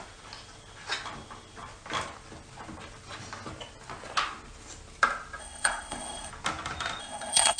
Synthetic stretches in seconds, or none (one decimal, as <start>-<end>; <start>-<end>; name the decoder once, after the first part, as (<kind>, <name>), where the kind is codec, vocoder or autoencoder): 5.4-6.3 (codec, SNAC); 7.0-7.6